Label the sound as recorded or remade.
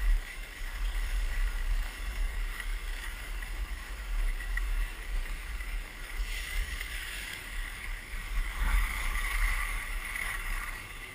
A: remade